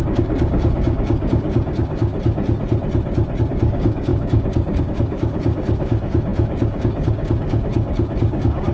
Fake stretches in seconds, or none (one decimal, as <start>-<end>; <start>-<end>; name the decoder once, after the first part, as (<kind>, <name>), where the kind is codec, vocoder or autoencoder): 0.0-2.1 (codec, DAC); 3.4-8.7